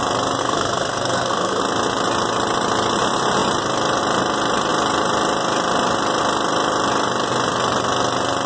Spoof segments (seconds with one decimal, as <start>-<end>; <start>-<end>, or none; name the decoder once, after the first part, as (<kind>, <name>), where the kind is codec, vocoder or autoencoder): 0.4-1.6 (codec, SNAC)